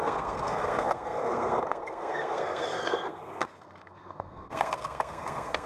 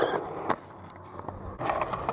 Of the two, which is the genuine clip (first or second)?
second